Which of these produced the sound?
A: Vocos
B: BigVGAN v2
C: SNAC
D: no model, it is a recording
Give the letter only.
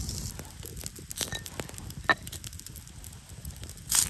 D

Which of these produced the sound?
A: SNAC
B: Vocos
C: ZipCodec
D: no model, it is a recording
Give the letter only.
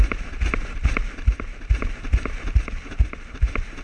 D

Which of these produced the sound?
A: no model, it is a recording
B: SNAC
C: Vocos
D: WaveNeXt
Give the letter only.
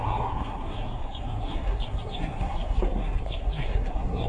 B